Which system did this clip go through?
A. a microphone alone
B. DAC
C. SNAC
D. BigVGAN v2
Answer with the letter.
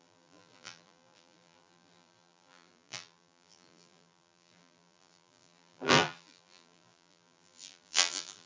D